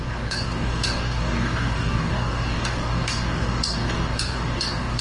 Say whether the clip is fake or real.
fake